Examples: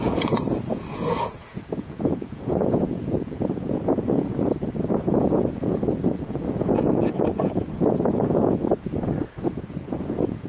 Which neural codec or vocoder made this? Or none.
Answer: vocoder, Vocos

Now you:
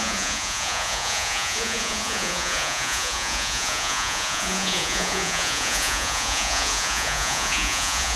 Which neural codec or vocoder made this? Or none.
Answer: vocoder, Vocos